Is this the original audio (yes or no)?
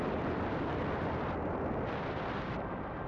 no